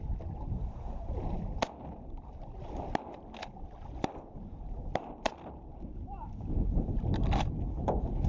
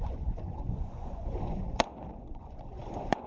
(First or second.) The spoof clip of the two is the second